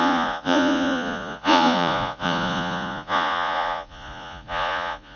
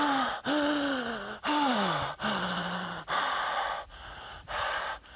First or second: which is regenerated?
first